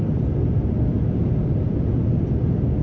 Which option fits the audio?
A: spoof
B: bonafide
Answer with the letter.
B